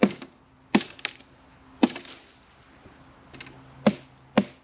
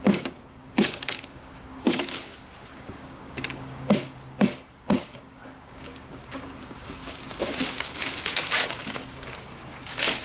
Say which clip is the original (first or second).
first